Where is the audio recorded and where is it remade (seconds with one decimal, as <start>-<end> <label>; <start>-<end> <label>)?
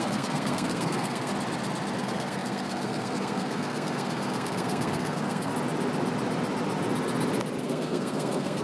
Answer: 0.0-1.3 remade; 1.3-2.0 recorded; 2.0-5.5 remade; 5.5-7.6 recorded; 7.6-8.6 remade